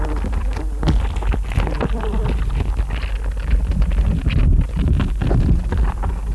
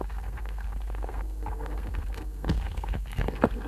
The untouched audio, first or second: first